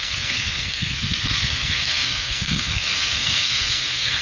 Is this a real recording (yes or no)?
no